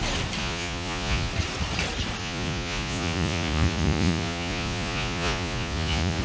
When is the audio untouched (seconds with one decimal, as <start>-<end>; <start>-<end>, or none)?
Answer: 0.0-0.4; 1.3-2.2